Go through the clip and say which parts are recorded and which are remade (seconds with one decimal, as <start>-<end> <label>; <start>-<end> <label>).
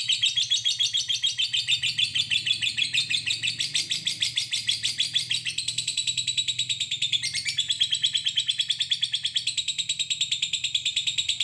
0.0-11.4 recorded